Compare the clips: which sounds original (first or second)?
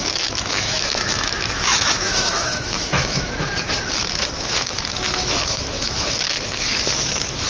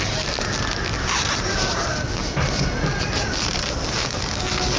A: second